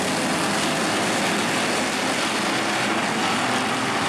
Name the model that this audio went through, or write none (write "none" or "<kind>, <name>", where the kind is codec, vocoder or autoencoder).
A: none